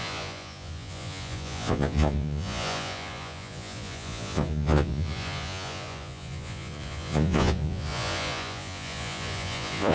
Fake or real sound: fake